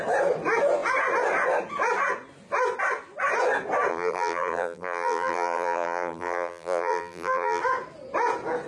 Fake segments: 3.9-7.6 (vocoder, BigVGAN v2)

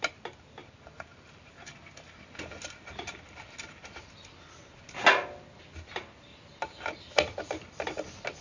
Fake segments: 0.6-4.1 (vocoder, BigVGAN v2)

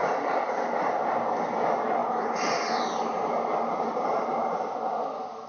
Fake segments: 0.0-0.6 (vocoder, BigVGAN v2); 2.0-4.6

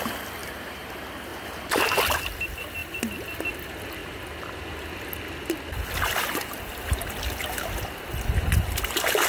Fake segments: 0.4-0.9 (vocoder, BigVGAN v2); 1.3-2.0